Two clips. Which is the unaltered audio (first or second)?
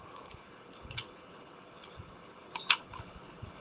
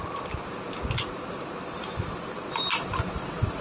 second